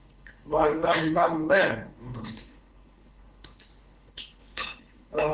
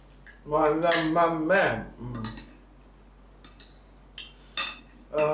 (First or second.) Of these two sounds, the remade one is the first